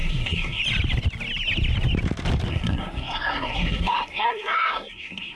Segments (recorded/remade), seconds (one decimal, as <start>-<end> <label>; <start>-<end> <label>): 0.0-0.6 remade; 0.6-2.5 recorded; 2.5-5.4 remade